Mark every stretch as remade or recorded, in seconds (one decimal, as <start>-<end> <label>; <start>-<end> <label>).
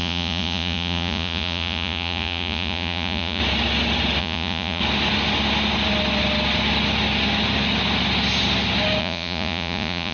0.0-3.4 remade; 3.4-4.2 recorded; 4.2-4.8 remade; 4.8-9.0 recorded; 9.0-10.1 remade